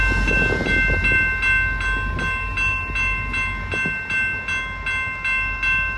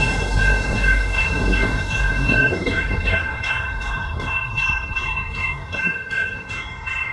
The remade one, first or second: second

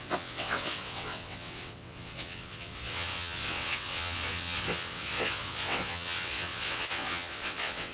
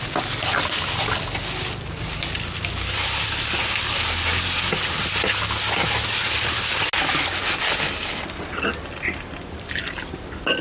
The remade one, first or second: first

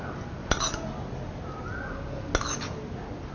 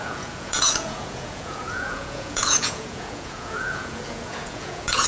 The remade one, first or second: second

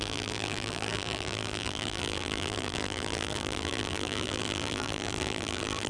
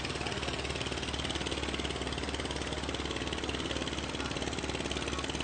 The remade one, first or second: first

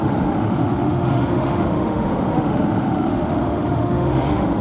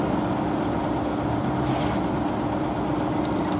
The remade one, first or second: first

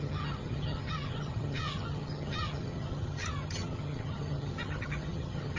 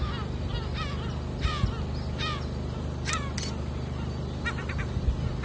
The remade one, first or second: first